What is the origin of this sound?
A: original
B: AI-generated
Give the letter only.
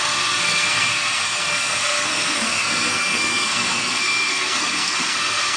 B